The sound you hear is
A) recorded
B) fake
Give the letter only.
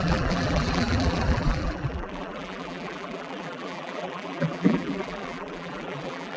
B